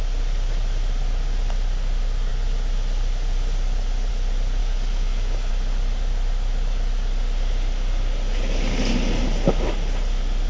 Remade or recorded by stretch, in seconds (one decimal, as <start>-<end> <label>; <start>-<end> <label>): 0.0-4.6 recorded; 4.6-5.5 remade; 5.5-10.5 recorded